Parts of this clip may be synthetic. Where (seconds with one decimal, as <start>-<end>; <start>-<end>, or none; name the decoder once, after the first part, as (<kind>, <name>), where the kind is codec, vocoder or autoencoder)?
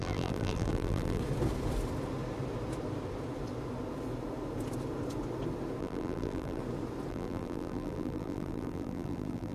0.0-1.2 (vocoder, BigVGAN v2); 5.8-6.6; 7.1-9.5